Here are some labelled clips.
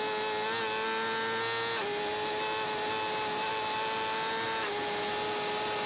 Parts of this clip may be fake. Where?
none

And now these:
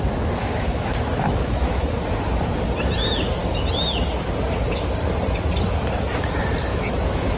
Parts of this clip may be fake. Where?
0.4-1.9 (autoencoder, DAC-VAE); 6.7-7.4

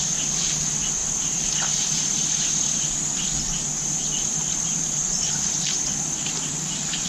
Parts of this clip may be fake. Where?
4.3-7.1 (vocoder, BigVGAN v2)

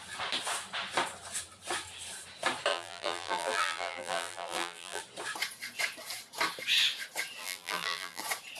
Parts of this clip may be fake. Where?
2.7-5.0 (vocoder, BigVGAN v2); 7.4-8.2

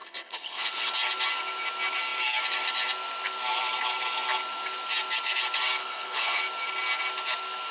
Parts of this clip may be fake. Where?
0.0-0.9 (codec, HILCodec); 5.8-6.4

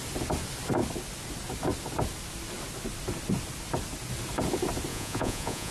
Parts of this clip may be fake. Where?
4.9-5.7 (vocoder, Vocos)